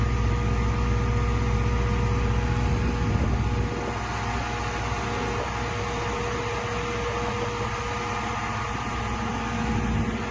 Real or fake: real